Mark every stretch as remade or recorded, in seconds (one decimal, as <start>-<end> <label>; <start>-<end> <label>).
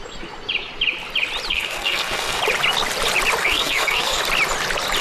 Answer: 0.0-1.5 recorded; 1.5-2.4 remade; 2.4-3.4 recorded; 3.4-4.2 remade; 4.2-5.0 recorded